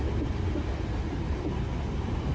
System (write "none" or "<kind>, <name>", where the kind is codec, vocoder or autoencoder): none